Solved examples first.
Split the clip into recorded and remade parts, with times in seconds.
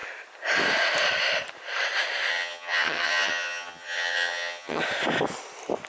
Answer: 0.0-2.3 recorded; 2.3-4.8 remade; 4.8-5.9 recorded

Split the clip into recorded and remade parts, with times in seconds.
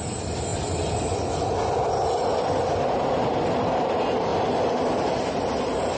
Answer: 0.0-6.0 recorded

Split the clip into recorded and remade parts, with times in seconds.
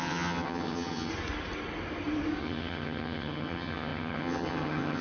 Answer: 0.0-1.1 remade; 1.1-2.4 recorded; 2.4-5.0 remade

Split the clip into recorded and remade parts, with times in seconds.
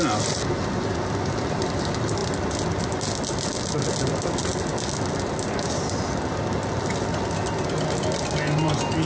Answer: 0.0-9.0 recorded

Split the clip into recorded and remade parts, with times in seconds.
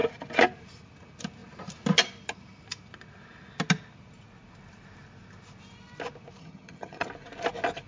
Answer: 0.0-6.4 recorded; 6.4-7.1 remade; 7.1-7.9 recorded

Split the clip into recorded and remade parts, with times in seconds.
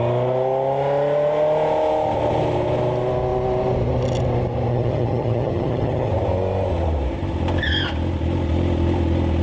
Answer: 0.0-4.7 recorded; 4.7-6.1 remade; 6.1-9.4 recorded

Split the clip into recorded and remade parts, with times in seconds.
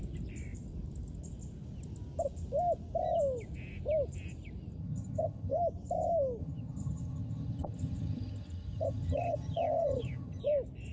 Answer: 0.0-4.8 recorded; 4.8-5.6 remade; 5.6-6.4 recorded; 6.4-10.4 remade; 10.4-10.9 recorded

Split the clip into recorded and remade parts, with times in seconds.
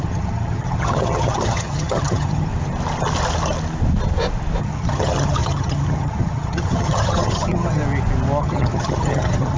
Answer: 0.0-2.5 remade; 2.5-4.6 recorded; 4.6-7.8 remade; 7.8-8.4 recorded; 8.4-9.6 remade